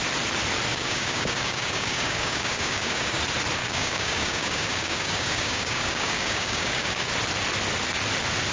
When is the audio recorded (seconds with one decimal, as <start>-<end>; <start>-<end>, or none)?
0.0-0.7; 3.2-3.6; 7.1-8.5

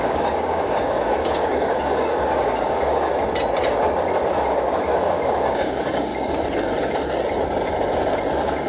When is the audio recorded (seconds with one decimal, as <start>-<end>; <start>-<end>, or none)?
3.1-4.3; 6.1-8.7

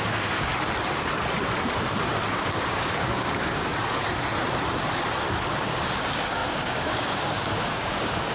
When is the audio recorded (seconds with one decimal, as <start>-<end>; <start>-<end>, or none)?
0.5-2.3; 3.7-5.6

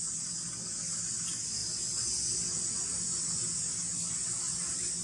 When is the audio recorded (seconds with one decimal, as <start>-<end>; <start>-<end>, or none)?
0.0-5.0